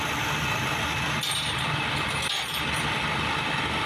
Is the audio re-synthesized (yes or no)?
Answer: no